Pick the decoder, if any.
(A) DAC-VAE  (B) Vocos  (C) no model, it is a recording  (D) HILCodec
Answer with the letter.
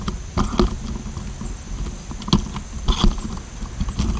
C